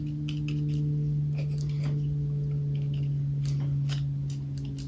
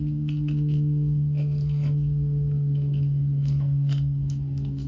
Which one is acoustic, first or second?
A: first